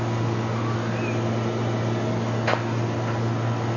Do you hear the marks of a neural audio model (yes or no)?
no